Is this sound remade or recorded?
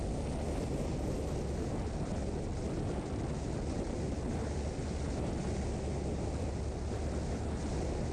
recorded